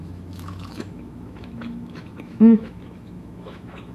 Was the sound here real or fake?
fake